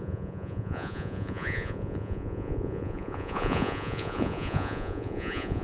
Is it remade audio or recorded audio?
remade